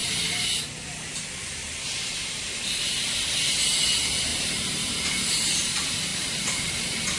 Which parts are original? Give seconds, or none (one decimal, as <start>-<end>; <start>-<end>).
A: 0.0-4.3; 5.0-6.1; 6.7-7.2

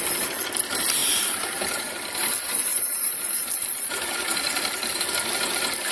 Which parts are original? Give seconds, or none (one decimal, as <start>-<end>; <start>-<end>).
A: 0.0-1.0; 1.9-2.7; 4.2-5.9

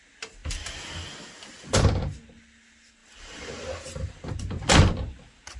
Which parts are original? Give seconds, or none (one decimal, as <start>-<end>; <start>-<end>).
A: 0.0-0.4; 1.3-3.0; 4.9-5.6

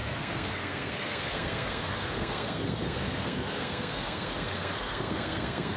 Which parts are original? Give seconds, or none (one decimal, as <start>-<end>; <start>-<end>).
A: none

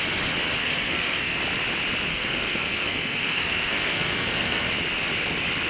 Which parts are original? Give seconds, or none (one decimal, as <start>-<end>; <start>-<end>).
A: 0.0-0.6; 1.4-2.1; 4.7-5.7

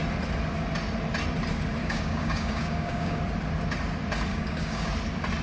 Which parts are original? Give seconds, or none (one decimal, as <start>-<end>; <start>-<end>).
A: 0.0-1.8; 3.2-4.3; 4.9-5.4

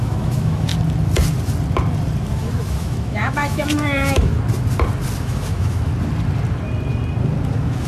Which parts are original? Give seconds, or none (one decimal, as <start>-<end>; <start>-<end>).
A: 0.7-2.3; 4.3-5.2; 5.9-7.5

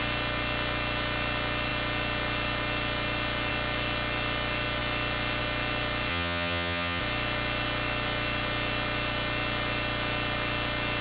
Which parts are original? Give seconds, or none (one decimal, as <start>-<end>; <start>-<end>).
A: 0.0-6.1; 7.0-11.0